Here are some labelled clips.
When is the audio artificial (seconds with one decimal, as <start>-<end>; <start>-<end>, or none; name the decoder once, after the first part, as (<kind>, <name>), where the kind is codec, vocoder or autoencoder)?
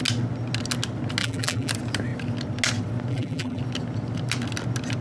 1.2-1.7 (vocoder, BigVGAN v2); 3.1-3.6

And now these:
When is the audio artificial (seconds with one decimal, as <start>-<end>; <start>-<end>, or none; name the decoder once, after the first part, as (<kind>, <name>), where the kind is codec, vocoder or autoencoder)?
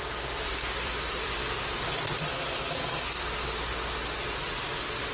0.0-1.4 (vocoder, BigVGAN v2); 2.2-3.7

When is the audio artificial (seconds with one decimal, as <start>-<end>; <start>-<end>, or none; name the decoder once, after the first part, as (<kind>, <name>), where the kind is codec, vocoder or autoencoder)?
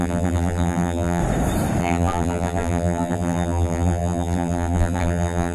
0.0-1.2 (vocoder, BigVGAN v2); 1.8-5.5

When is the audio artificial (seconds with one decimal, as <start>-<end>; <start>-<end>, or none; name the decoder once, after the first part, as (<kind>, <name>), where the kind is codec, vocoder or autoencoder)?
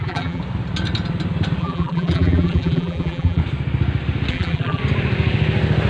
0.0-0.4 (vocoder, BigVGAN v2); 1.6-3.4; 4.3-4.8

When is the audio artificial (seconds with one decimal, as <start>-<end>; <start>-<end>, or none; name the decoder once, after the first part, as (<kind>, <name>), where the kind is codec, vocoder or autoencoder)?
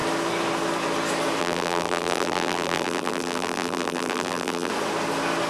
1.4-4.7 (vocoder, BigVGAN v2)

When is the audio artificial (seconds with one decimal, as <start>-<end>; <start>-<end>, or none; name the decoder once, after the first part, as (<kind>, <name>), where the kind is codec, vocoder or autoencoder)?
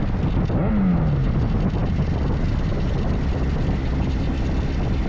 none